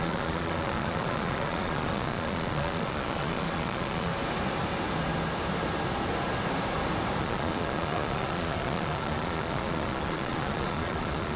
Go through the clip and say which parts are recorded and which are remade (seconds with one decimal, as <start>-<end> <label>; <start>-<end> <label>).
0.0-4.1 remade; 4.1-7.2 recorded; 7.2-11.4 remade